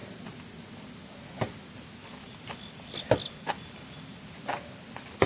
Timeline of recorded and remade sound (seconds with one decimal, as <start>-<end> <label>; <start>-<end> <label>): 0.0-5.3 recorded